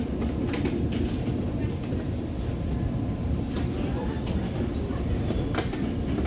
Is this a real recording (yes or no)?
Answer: no